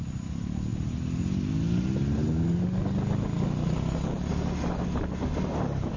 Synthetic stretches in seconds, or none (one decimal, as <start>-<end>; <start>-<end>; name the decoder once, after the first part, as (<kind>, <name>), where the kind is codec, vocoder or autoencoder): none